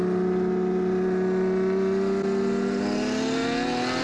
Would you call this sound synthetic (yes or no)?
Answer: no